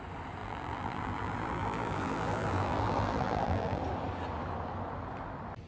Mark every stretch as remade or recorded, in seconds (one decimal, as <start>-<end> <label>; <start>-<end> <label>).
0.0-0.4 recorded; 0.4-3.8 remade; 3.8-5.7 recorded